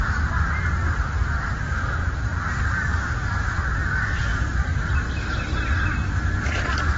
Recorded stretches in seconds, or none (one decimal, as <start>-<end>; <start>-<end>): 0.0-2.3; 2.9-4.3; 5.0-7.0